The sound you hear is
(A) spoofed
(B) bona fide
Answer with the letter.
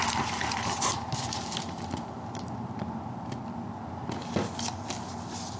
A